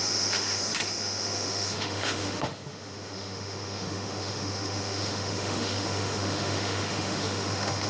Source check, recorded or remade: remade